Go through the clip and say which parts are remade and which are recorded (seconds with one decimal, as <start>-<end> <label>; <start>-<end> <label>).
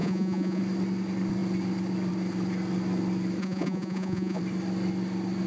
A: 0.0-0.6 remade; 0.6-3.4 recorded; 3.4-4.4 remade; 4.4-5.5 recorded